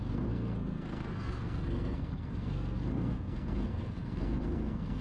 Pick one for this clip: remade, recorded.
remade